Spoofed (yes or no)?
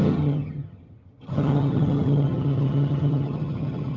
yes